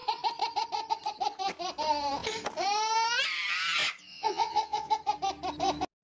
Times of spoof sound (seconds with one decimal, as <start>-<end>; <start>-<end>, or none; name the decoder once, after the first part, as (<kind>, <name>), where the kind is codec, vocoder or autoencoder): 4.1-4.9 (vocoder, Vocos)